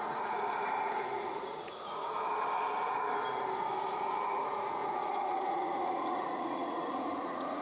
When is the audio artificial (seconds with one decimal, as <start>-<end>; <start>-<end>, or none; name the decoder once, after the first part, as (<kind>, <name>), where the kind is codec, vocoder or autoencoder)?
0.0-2.0 (vocoder, Vocos); 4.3-7.6